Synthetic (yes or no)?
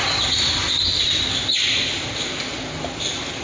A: no